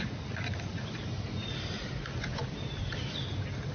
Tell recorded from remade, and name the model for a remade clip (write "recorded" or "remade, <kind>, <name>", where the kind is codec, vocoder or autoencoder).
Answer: recorded